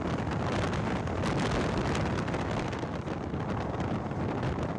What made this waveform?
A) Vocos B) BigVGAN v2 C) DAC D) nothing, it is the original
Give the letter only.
D